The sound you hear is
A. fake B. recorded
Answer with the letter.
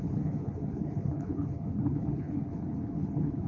A